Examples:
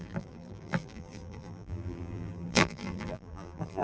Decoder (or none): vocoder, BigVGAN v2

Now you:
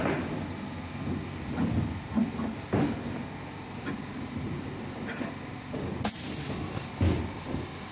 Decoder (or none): none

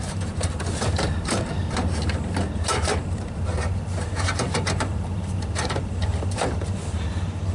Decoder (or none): vocoder, BigVGAN v2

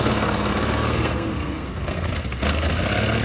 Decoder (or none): codec, SNAC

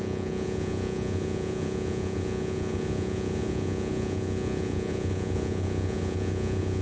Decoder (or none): vocoder, Vocos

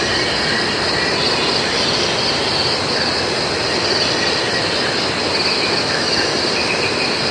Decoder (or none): none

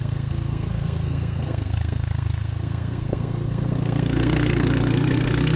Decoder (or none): codec, SNAC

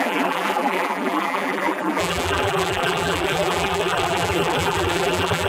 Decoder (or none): vocoder, BigVGAN v2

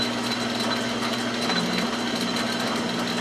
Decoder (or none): none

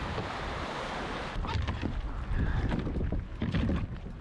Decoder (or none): none